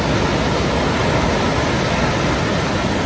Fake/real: real